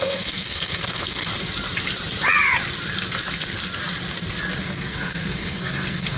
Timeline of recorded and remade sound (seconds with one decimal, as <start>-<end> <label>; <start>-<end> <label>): 0.0-1.3 remade; 1.3-4.6 recorded; 4.6-6.2 remade